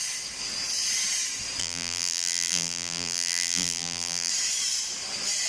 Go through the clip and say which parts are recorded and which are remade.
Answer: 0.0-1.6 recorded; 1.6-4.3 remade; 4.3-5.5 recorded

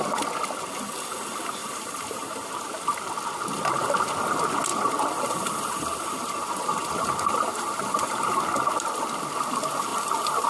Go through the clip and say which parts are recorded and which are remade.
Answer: 0.0-1.6 recorded; 1.6-3.0 remade; 3.0-4.7 recorded; 4.7-8.4 remade; 8.4-10.5 recorded